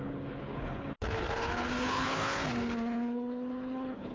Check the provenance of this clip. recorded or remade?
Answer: remade